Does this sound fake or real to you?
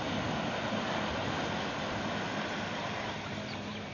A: real